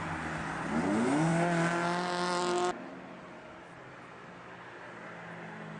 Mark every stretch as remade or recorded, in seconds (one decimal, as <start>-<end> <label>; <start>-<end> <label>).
0.0-5.8 recorded

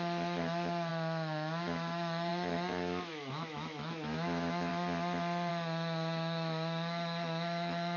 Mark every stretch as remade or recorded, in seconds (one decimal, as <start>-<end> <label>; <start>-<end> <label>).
0.0-4.7 remade; 4.7-5.5 recorded; 5.5-8.0 remade

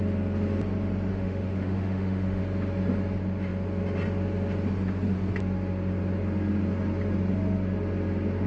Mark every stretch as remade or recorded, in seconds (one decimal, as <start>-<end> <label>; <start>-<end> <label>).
0.0-1.1 recorded; 1.1-2.4 remade; 2.4-8.5 recorded

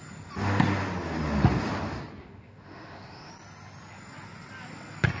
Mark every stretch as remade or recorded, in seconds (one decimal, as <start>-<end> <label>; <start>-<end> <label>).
0.0-2.2 recorded; 2.2-3.3 remade; 3.3-5.2 recorded